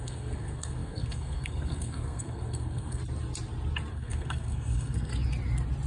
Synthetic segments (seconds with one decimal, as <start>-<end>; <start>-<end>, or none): 0.0-3.0; 3.9-5.1